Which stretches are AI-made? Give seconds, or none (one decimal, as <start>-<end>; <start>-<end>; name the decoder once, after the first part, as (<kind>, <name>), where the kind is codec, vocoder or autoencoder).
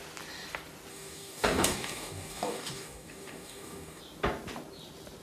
0.9-4.0 (codec, DAC)